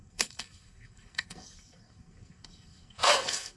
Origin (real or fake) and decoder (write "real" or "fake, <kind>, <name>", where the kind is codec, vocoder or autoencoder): fake, codec, SNAC